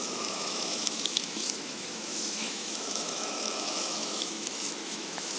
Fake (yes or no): yes